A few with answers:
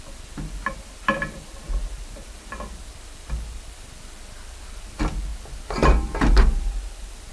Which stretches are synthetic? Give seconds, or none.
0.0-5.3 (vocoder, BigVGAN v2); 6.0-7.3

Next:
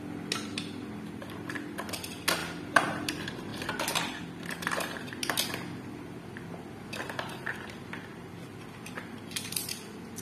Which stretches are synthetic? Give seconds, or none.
none

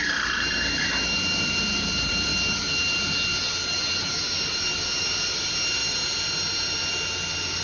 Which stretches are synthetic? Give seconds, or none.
0.0-2.3 (vocoder, BigVGAN v2); 5.0-5.8

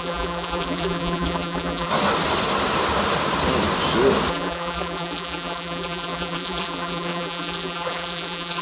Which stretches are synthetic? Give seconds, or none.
0.0-1.9 (vocoder, BigVGAN v2); 4.3-8.6

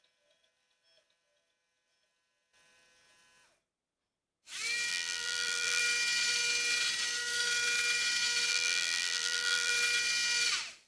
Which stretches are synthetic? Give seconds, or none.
4.9-5.8 (vocoder, BigVGAN v2); 8.5-9.7

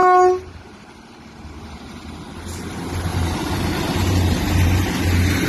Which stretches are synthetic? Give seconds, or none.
3.1-5.0 (vocoder, BigVGAN v2)